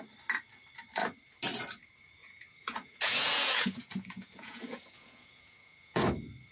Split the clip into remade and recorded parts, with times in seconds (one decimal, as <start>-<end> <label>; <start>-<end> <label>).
0.0-2.2 recorded; 2.2-6.0 remade; 6.0-6.5 recorded